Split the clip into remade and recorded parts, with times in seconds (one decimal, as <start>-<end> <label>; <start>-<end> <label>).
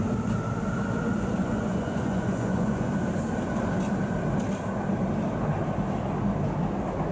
0.0-1.4 recorded; 1.4-2.9 remade; 2.9-7.1 recorded